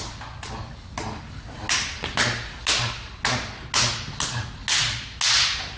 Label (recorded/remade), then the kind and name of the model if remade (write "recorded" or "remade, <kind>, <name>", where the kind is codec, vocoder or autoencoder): recorded